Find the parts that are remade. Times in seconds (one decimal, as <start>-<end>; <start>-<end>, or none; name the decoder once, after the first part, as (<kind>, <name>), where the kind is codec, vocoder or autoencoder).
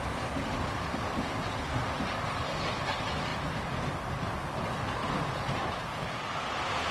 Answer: 5.0-5.7 (vocoder, BigVGAN v2)